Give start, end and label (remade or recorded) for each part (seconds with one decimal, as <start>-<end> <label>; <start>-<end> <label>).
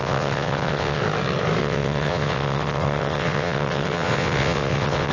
0.0-1.0 remade; 1.0-1.6 recorded; 1.6-5.1 remade